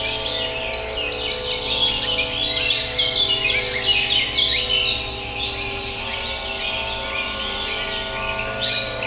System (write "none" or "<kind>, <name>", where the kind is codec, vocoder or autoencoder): none